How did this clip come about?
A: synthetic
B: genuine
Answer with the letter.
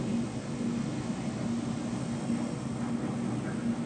B